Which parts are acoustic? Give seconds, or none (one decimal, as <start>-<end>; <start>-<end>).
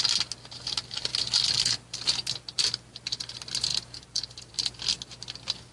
0.0-3.7; 4.5-5.7